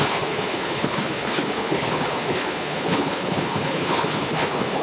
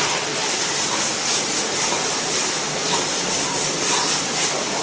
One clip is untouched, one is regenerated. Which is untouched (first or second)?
second